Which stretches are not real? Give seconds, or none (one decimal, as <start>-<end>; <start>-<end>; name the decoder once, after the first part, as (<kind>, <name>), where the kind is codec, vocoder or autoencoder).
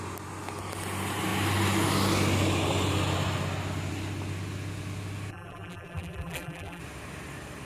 5.3-6.8 (vocoder, BigVGAN v2)